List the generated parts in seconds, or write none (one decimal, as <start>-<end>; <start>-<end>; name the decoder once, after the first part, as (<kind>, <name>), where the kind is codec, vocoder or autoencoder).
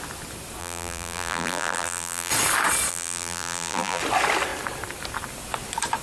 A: 0.6-2.3 (vocoder, BigVGAN v2); 2.9-4.0